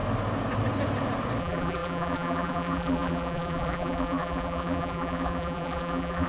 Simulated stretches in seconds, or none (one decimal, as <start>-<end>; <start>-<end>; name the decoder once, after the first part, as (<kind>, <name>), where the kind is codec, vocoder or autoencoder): 1.4-6.3 (vocoder, BigVGAN v2)